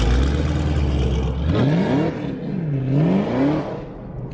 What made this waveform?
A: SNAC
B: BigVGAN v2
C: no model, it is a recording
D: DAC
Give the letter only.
C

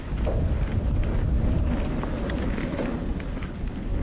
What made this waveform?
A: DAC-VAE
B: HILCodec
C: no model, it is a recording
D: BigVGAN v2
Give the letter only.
D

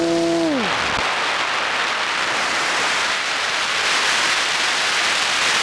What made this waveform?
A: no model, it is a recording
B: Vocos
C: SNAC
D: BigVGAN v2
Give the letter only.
A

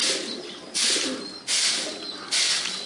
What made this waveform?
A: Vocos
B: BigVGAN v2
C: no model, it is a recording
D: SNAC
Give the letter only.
C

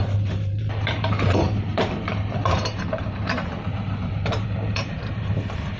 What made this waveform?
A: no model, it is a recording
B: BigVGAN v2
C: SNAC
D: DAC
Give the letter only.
B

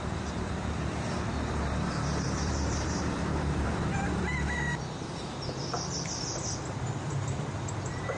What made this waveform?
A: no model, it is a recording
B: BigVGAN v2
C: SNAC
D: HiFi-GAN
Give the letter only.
B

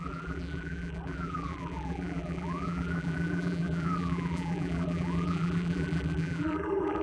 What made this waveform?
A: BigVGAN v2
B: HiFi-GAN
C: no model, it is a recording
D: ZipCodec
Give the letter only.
A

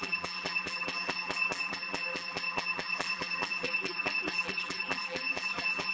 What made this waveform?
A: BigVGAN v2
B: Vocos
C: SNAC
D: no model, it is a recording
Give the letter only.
A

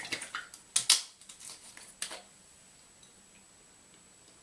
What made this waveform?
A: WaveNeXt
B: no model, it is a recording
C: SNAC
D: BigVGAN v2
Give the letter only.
B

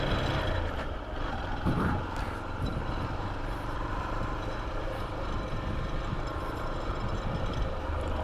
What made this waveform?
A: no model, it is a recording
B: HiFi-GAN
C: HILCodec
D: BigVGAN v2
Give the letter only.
D